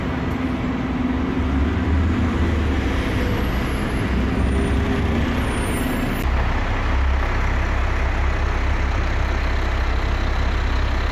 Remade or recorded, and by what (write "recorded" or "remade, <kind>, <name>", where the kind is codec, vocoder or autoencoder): recorded